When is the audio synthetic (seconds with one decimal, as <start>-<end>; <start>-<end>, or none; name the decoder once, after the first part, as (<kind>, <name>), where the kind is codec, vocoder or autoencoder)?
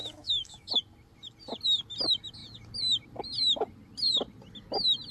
0.0-0.7 (autoencoder, DAC-VAE)